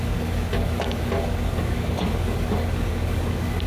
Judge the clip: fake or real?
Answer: fake